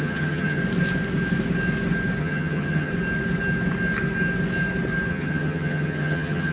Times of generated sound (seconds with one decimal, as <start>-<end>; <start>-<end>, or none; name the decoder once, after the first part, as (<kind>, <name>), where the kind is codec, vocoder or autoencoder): 0.0-0.6 (vocoder, HiFi-GAN); 2.2-2.9; 5.1-6.5